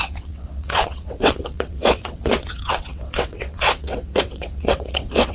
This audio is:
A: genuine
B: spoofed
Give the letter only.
B